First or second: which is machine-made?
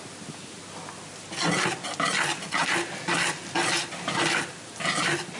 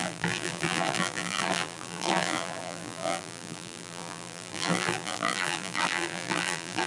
second